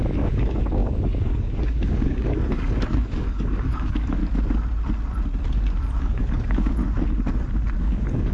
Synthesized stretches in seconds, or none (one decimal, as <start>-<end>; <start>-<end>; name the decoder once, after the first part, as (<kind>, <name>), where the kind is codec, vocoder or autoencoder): 0.0-4.2 (codec, DAC); 6.0-6.8; 7.8-8.3